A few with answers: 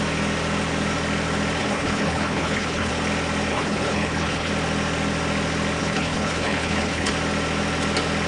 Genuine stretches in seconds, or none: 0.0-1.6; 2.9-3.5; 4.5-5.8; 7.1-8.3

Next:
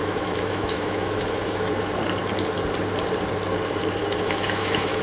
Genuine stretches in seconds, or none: 1.7-4.0

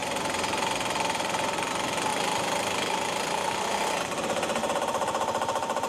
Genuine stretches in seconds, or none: 1.7-2.1; 3.7-4.6

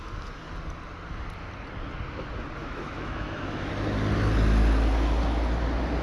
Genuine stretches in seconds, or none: 0.0-2.6; 3.7-6.0

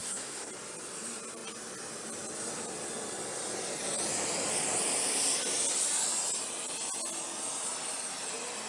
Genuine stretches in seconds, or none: 0.5-8.7

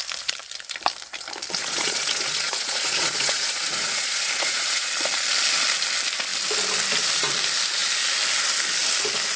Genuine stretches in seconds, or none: 0.0-1.6; 4.9-9.4

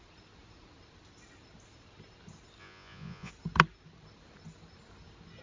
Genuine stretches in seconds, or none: 0.0-2.6; 3.3-5.4